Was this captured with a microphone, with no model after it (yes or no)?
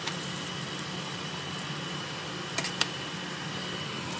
yes